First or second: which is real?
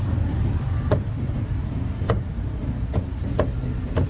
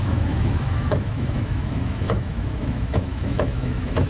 first